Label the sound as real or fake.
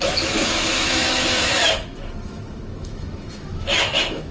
fake